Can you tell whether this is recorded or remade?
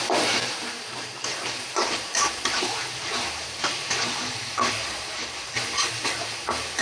remade